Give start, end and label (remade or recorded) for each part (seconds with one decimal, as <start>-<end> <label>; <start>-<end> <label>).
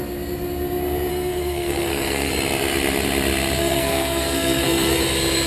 0.0-1.1 recorded; 1.1-2.3 remade; 2.3-3.6 recorded; 3.6-5.0 remade; 5.0-5.5 recorded